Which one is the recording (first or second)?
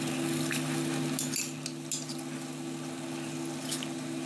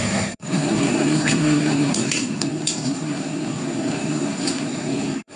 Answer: first